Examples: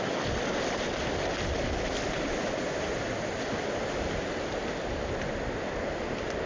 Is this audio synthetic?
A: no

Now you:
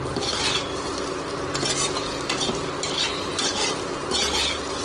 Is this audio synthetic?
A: no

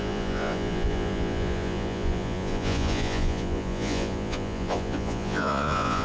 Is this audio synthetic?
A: yes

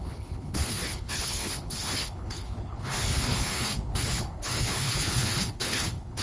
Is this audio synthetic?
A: yes